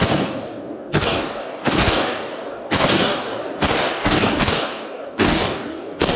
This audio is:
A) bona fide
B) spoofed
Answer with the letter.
B